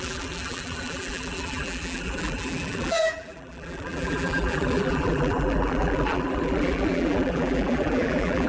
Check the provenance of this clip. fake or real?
fake